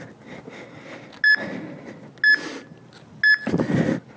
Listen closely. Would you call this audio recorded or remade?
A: recorded